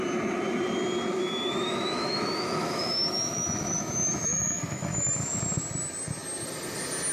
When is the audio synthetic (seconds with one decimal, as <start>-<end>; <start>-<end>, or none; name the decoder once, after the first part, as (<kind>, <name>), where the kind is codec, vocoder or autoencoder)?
1.1-5.4 (autoencoder, DAC-VAE)